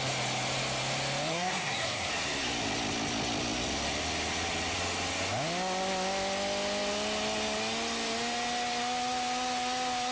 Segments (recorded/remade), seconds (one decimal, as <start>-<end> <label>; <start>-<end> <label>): 0.0-1.3 recorded; 1.3-2.1 remade; 2.1-10.1 recorded